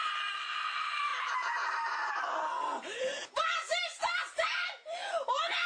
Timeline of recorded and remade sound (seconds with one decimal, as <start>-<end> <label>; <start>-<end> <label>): 0.0-1.1 remade; 1.1-2.1 recorded; 2.1-3.2 remade; 3.2-3.8 recorded; 3.8-5.0 remade; 5.0-5.7 recorded